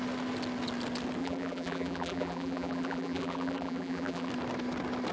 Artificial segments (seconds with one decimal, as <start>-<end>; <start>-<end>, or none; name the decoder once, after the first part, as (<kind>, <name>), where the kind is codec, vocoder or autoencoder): 1.2-4.3 (vocoder, BigVGAN v2)